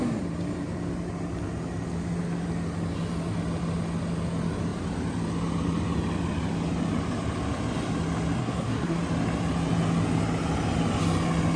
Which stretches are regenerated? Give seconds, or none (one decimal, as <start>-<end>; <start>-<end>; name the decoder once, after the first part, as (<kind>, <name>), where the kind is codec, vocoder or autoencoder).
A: 8.4-9.0 (codec, SNAC)